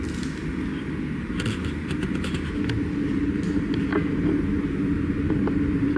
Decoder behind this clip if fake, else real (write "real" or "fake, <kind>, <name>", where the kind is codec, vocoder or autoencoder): real